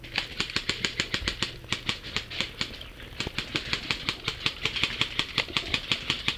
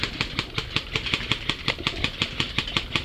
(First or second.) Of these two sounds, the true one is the first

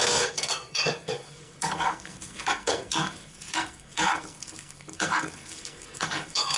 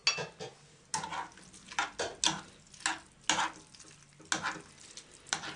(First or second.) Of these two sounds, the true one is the second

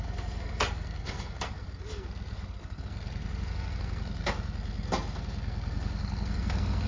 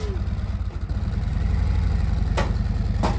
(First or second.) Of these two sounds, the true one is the second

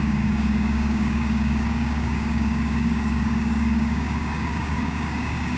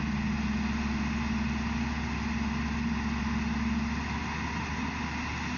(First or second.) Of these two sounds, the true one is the second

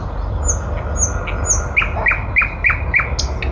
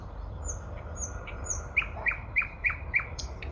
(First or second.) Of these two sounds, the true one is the first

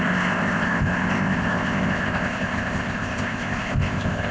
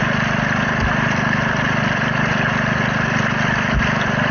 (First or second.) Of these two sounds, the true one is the second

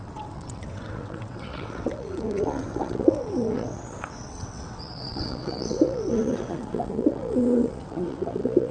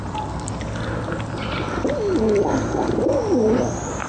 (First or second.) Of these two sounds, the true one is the second